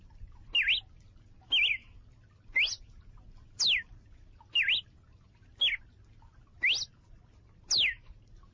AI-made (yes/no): no